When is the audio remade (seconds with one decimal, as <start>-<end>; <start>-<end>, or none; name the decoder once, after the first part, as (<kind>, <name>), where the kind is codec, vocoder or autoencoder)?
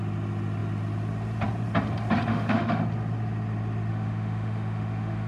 2.3-2.8 (autoencoder, DAC-VAE); 3.9-5.3